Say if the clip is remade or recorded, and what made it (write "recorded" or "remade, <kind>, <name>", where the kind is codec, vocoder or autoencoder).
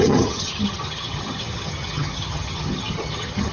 remade, vocoder, HiFi-GAN